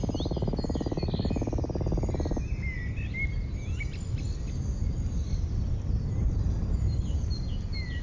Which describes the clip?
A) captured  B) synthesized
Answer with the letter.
A